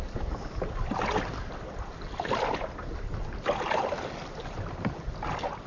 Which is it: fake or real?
real